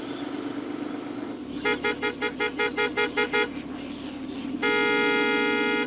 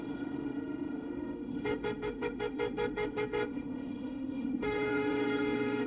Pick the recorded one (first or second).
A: first